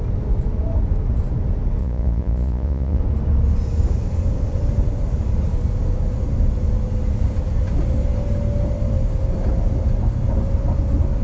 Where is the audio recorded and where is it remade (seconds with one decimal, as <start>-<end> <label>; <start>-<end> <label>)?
0.0-1.8 recorded; 1.8-3.0 remade; 3.0-11.2 recorded